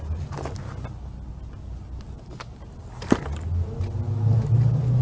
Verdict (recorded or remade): recorded